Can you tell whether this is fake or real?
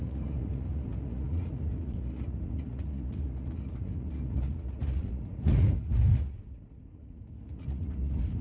fake